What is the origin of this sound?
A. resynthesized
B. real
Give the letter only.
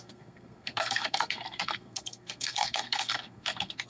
A